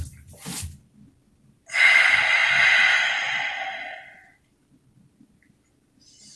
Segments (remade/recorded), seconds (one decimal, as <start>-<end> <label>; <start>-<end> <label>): 0.0-6.4 recorded